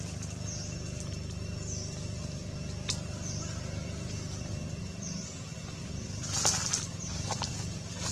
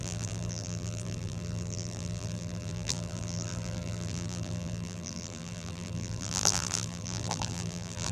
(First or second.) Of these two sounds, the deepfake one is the second